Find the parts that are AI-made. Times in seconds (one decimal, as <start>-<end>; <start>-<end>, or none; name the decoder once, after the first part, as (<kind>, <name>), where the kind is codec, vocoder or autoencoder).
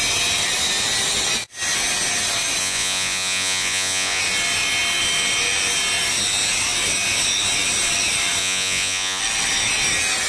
2.6-4.2 (vocoder, Vocos); 8.4-9.2